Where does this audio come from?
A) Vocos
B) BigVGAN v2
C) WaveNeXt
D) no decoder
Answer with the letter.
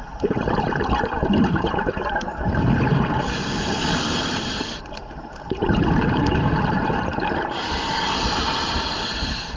B